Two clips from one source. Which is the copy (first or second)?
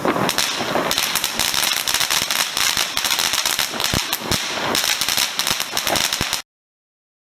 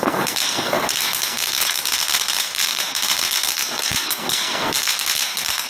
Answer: second